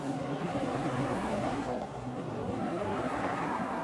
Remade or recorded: remade